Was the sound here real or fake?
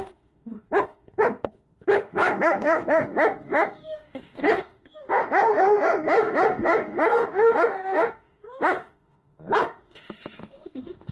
fake